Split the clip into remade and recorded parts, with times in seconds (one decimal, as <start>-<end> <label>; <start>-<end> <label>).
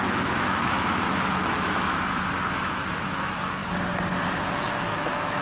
0.0-1.9 remade; 1.9-2.5 recorded; 2.5-3.6 remade; 3.6-4.5 recorded; 4.5-5.4 remade